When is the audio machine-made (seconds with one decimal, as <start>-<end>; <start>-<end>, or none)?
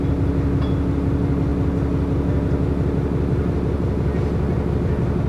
none